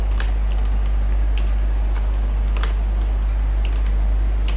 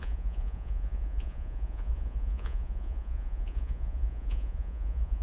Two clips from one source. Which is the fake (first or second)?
second